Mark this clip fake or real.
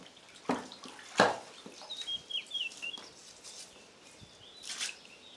real